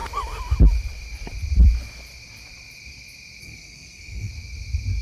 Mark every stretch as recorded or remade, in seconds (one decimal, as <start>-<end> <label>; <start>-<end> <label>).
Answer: 0.0-3.4 recorded; 3.4-4.3 remade; 4.3-5.0 recorded